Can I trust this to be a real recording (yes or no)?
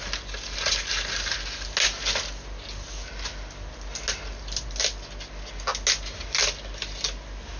yes